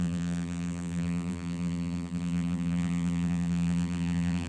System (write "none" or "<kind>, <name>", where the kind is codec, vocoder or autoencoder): vocoder, BigVGAN v2